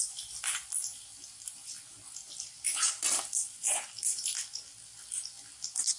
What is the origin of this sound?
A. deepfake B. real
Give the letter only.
B